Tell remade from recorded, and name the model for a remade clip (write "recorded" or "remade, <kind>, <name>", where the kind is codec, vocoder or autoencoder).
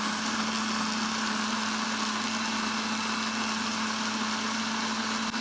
recorded